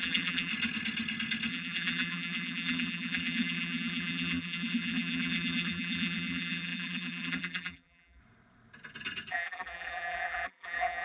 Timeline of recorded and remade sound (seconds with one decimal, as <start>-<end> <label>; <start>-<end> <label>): 0.0-0.5 remade; 0.5-1.5 recorded; 1.5-8.2 remade; 8.2-9.3 recorded; 9.3-11.0 remade